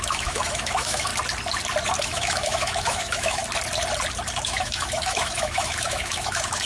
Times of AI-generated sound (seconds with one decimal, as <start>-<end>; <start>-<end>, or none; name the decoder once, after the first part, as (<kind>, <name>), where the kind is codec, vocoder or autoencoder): 0.0-1.1 (autoencoder, DAC-VAE); 2.0-3.4; 4.4-6.7